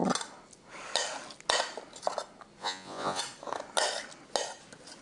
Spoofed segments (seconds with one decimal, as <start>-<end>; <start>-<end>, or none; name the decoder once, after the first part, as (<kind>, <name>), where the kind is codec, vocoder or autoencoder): 2.6-3.2 (vocoder, Vocos)